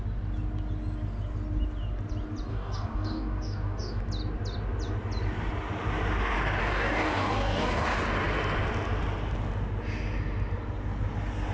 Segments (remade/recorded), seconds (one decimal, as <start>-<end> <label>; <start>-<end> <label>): 0.0-2.5 recorded; 2.5-4.0 remade; 4.0-6.6 recorded; 6.6-8.0 remade; 8.0-11.5 recorded